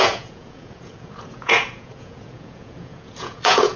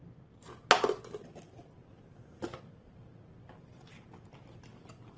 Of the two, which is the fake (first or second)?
first